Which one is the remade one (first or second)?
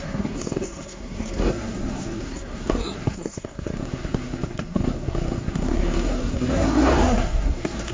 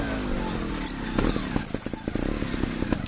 first